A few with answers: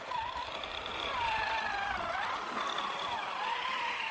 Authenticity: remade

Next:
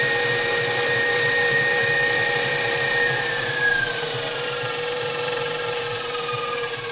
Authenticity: remade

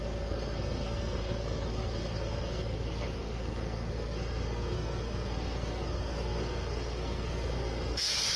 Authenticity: remade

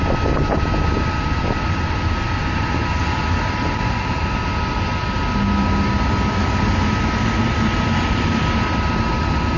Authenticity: recorded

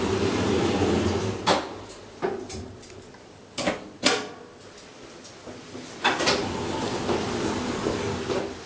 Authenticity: recorded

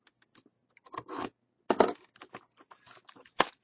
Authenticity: recorded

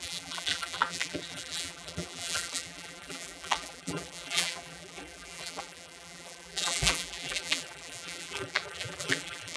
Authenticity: remade